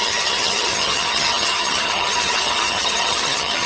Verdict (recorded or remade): remade